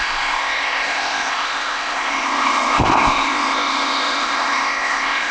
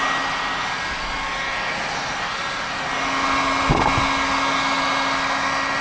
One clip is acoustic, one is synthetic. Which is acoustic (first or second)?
second